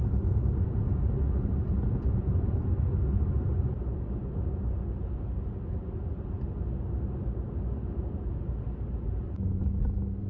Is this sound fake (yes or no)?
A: no